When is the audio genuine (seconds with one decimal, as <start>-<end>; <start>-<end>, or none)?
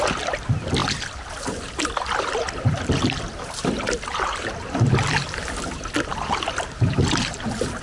0.0-7.8